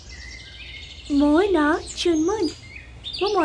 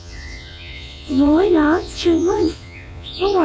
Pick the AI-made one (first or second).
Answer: second